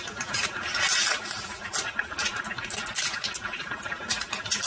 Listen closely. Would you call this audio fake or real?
real